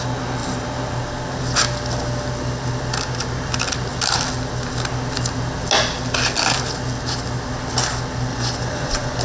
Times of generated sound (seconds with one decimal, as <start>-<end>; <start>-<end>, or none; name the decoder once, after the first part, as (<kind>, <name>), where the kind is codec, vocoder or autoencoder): 8.3-9.2 (vocoder, Vocos)